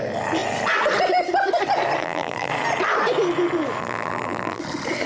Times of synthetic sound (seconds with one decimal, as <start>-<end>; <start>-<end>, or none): 2.0-2.5; 3.8-4.6